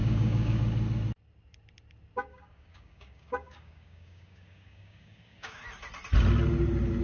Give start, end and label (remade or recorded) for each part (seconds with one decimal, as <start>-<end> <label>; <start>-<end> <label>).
0.0-0.6 remade; 0.6-2.3 recorded; 2.3-5.6 remade; 5.6-7.0 recorded